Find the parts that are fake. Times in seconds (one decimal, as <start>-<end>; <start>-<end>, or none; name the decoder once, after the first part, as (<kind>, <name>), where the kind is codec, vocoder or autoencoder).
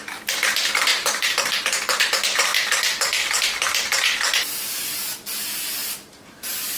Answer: 0.0-2.5 (vocoder, BigVGAN v2); 4.7-6.8